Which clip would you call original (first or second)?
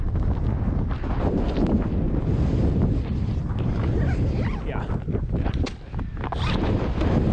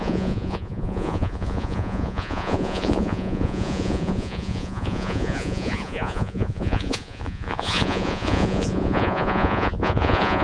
first